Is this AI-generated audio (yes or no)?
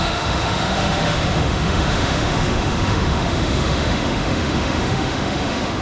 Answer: yes